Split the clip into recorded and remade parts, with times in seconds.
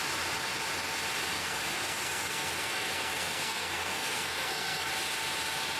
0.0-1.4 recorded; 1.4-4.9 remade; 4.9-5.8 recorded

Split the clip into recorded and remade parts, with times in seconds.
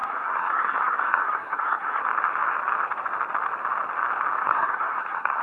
0.0-2.0 remade; 2.0-4.4 recorded; 4.4-5.4 remade